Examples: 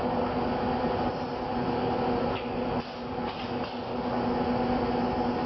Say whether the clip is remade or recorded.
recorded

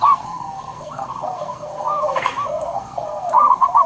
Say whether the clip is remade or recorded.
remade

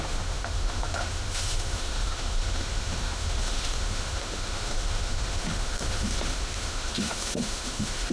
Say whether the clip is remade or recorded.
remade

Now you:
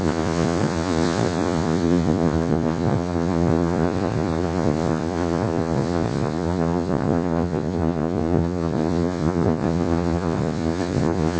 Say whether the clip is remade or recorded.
remade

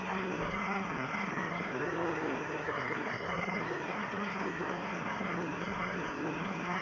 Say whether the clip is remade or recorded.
remade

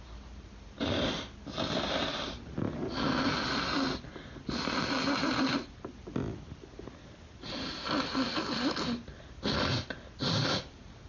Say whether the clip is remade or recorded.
recorded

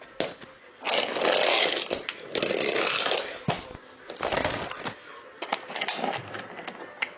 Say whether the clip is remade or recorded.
recorded